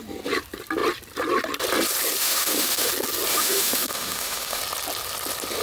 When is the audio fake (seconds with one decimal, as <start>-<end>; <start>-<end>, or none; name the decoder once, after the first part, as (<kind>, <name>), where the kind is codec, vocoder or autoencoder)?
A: 2.2-2.9 (autoencoder, DAC-VAE); 3.3-4.6